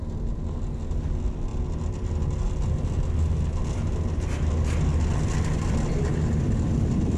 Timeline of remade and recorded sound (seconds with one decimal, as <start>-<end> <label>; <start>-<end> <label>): 0.0-7.2 recorded